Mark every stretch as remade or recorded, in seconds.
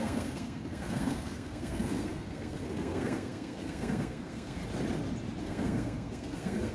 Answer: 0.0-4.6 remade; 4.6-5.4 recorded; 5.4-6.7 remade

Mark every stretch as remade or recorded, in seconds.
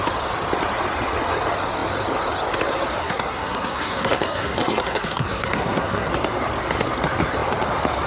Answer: 0.0-3.0 recorded; 3.0-6.1 remade; 6.1-8.1 recorded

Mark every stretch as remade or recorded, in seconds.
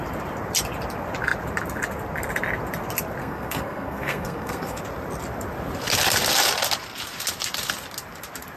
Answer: 0.0-3.2 recorded; 3.2-4.8 remade; 4.8-8.6 recorded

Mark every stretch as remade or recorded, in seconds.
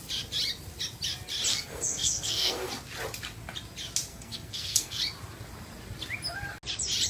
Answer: 0.0-1.5 recorded; 1.5-2.7 remade; 2.7-4.1 recorded; 4.1-5.0 remade; 5.0-7.1 recorded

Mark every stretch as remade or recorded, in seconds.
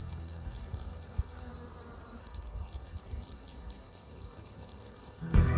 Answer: 0.0-1.5 remade; 1.5-2.2 recorded; 2.2-5.6 remade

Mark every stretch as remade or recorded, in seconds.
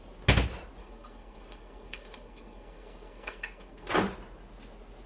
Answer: 0.0-0.8 recorded; 0.8-3.9 remade; 3.9-5.1 recorded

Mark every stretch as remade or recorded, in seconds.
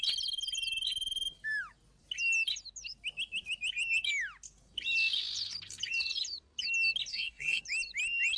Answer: 0.0-7.1 recorded; 7.1-7.6 remade; 7.6-8.4 recorded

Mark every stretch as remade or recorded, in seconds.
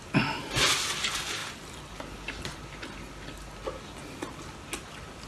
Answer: 0.0-5.3 recorded